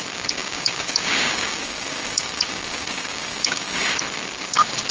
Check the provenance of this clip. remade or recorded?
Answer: remade